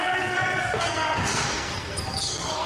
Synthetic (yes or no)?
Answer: yes